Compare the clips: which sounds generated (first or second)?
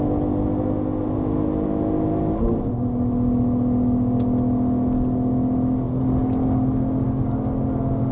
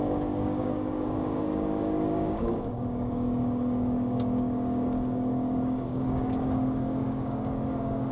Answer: second